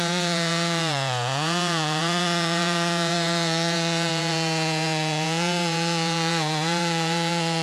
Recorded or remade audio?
remade